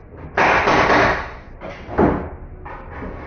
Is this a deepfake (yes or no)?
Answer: no